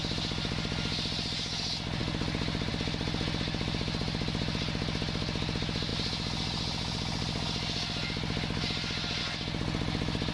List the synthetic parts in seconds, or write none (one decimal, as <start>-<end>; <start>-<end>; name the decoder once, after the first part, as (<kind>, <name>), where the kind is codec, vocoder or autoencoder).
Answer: none